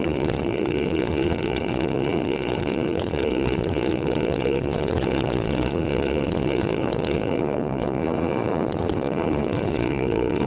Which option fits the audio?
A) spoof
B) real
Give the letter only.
A